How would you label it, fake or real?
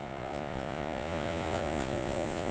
fake